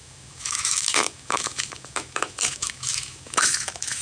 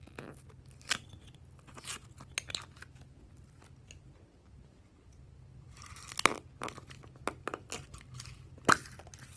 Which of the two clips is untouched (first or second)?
second